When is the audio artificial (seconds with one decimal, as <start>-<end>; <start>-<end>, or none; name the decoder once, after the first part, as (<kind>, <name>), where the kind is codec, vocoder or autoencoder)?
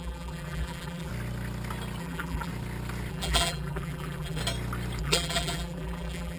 0.0-1.1 (vocoder, BigVGAN v2); 2.0-2.5; 3.1-4.4; 5.0-6.4